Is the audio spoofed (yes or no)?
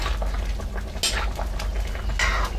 no